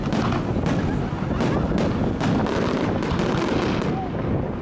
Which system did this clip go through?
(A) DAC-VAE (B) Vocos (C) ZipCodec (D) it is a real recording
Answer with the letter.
D